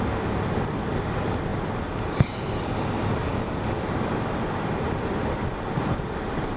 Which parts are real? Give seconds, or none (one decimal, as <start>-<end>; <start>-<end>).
3.3-4.2